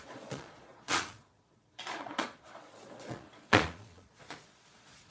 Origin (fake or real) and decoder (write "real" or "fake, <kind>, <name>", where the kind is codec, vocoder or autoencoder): fake, vocoder, Vocos